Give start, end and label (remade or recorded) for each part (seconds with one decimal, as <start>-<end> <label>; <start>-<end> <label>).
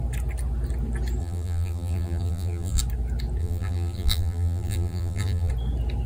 0.0-1.2 recorded; 1.2-2.8 remade; 2.8-3.4 recorded; 3.4-5.5 remade; 5.5-6.1 recorded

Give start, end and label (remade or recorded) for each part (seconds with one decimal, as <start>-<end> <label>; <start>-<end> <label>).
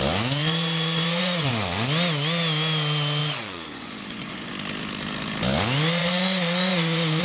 0.0-0.4 recorded; 0.4-1.5 remade; 1.5-3.2 recorded; 3.2-4.5 remade; 4.5-6.0 recorded; 6.0-7.2 remade